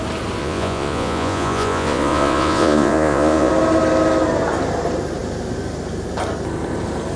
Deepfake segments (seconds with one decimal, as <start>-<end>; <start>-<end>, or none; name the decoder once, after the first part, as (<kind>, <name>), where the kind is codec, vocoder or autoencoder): 0.4-3.5 (vocoder, Vocos)